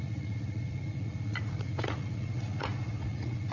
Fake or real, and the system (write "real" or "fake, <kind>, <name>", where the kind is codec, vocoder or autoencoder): fake, vocoder, Vocos